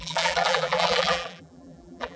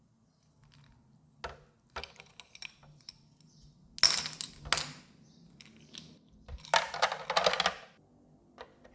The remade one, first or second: first